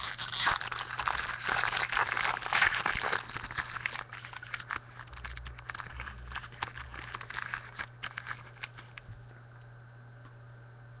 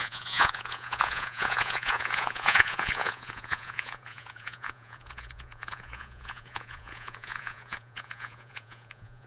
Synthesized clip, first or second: second